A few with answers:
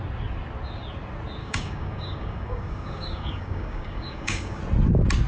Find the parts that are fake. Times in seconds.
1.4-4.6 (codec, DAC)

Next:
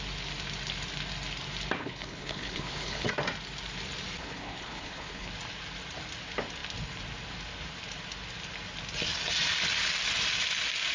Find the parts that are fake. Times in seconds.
1.8-3.1 (codec, HILCodec); 4.2-5.3